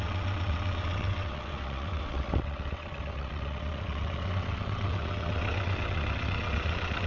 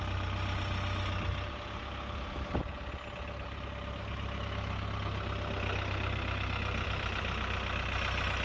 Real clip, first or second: second